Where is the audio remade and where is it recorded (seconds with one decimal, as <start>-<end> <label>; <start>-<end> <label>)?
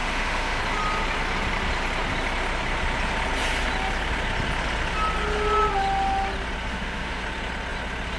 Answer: 0.0-0.6 remade; 0.6-6.7 recorded; 6.7-7.2 remade; 7.2-8.2 recorded